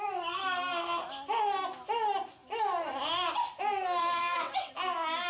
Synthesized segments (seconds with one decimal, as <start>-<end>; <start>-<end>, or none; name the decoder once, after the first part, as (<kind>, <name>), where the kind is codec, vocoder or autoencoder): 4.0-4.7 (vocoder, WaveNeXt)